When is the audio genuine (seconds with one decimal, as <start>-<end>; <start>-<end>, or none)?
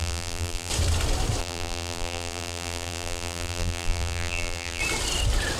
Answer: 0.7-1.4; 4.8-5.6